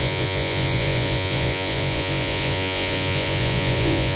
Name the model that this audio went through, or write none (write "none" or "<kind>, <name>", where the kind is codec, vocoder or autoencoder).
vocoder, Vocos